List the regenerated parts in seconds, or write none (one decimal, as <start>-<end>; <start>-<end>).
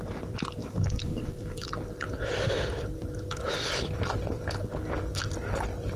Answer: 0.6-1.7